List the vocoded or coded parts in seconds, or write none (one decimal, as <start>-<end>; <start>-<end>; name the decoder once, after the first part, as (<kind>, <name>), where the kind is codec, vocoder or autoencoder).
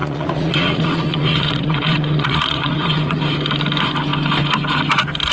0.0-3.2 (vocoder, Vocos)